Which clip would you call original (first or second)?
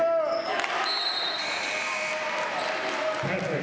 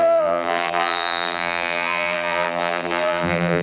first